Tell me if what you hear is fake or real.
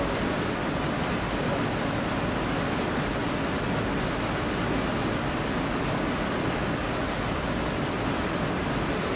real